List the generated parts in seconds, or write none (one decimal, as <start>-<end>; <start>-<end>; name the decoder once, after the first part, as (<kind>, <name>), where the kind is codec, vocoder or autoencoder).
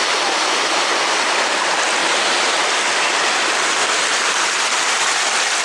2.0-2.6 (vocoder, BigVGAN v2); 3.8-5.1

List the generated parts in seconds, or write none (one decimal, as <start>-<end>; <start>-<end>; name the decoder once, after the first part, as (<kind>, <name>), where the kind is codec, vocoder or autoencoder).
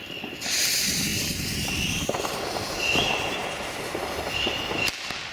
none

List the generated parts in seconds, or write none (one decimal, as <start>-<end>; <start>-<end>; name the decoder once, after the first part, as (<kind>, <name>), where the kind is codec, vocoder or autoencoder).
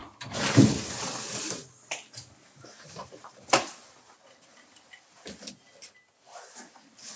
none